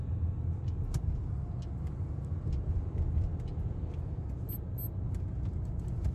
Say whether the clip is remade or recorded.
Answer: recorded